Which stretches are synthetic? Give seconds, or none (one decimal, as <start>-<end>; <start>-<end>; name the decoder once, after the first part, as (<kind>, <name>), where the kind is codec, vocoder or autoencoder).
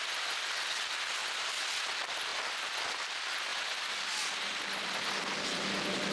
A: none